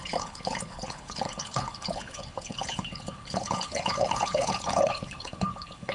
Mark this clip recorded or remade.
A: remade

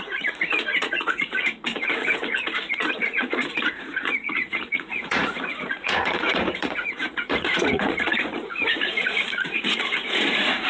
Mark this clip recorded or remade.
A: remade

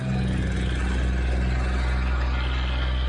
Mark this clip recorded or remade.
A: recorded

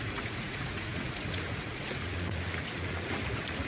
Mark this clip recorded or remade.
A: remade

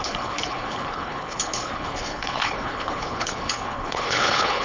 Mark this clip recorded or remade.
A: remade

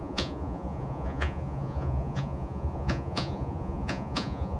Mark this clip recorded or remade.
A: remade